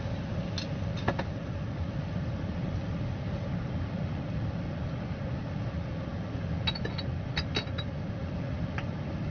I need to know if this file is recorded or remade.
recorded